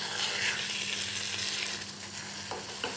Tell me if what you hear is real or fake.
real